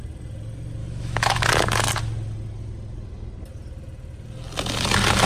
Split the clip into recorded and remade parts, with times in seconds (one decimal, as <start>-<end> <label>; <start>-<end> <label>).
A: 0.0-0.8 recorded; 0.8-1.5 remade; 1.5-5.3 recorded